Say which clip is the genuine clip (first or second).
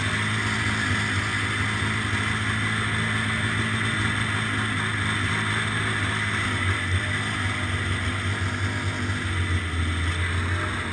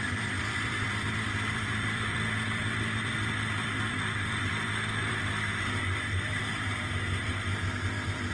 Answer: first